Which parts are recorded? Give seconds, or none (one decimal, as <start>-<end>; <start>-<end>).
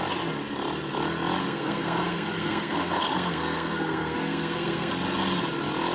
0.0-1.4; 4.9-5.9